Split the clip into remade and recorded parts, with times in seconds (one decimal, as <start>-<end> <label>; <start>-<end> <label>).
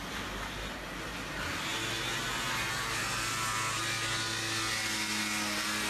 0.0-5.9 recorded